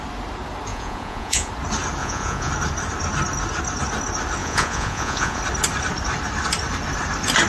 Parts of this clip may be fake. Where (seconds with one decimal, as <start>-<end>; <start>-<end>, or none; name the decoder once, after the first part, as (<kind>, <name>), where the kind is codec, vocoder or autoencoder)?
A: 0.7-1.5 (vocoder, Vocos); 2.0-2.5; 4.4-5.4